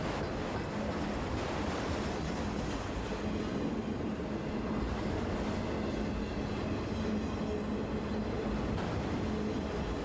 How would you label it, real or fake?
real